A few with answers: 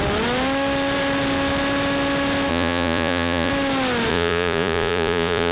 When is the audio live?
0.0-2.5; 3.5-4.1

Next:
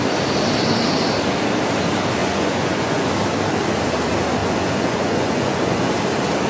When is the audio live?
0.0-2.2; 3.1-4.4; 5.9-6.5

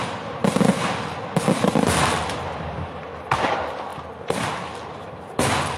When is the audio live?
0.0-5.8

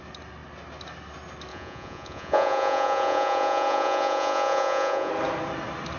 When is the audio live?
0.0-1.5; 5.1-6.0